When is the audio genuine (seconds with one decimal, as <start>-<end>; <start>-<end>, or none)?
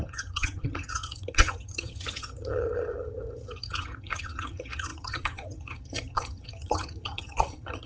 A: none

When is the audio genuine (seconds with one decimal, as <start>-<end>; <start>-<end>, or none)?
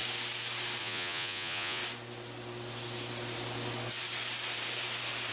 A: 0.0-0.8; 1.8-5.3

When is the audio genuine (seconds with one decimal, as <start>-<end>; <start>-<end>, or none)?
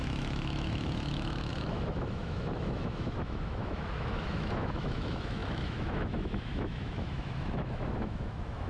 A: none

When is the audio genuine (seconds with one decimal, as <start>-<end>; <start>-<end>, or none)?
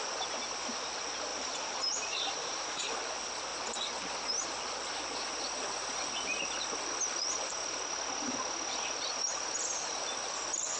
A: 0.0-1.3; 2.9-10.8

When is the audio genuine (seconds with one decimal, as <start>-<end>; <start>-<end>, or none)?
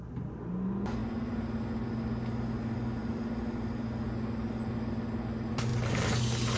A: 0.0-6.6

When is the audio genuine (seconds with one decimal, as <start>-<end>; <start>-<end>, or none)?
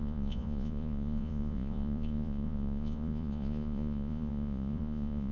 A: none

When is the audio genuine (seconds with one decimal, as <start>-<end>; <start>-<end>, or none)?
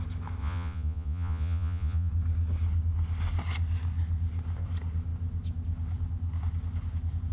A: 0.0-0.4; 2.1-7.3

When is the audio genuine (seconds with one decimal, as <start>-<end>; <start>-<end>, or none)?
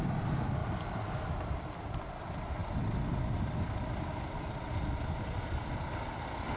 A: 0.0-6.6